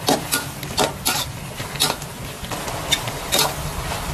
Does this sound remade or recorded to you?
recorded